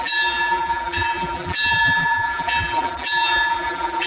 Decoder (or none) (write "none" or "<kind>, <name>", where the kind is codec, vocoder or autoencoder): vocoder, BigVGAN v2